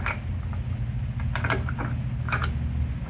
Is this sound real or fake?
real